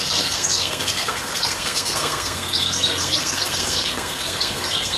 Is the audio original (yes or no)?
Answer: no